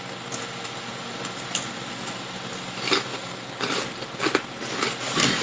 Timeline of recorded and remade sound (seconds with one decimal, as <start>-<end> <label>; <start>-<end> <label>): 0.0-3.1 recorded; 3.1-4.2 remade; 4.2-5.4 recorded